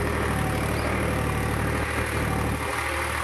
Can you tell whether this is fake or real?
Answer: real